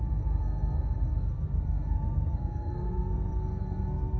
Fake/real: fake